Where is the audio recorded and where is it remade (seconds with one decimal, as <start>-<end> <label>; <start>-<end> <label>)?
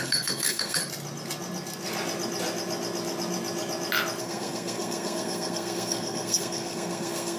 0.0-0.8 remade; 0.8-4.2 recorded; 4.2-7.4 remade